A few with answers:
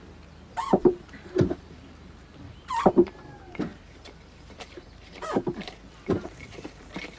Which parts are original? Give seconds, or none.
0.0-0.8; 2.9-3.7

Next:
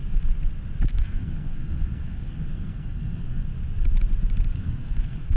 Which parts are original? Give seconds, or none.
0.0-0.9; 3.4-4.5